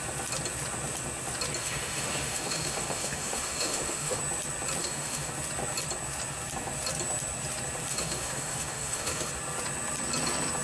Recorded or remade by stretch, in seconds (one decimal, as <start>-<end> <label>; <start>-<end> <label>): 0.0-1.6 recorded; 1.6-4.2 remade; 4.2-4.8 recorded; 4.8-5.3 remade; 5.3-7.9 recorded; 7.9-9.3 remade; 9.3-10.6 recorded